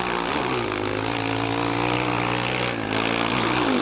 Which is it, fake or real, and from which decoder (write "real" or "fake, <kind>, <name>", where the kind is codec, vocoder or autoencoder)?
real